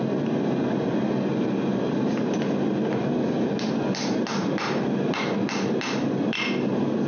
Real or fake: real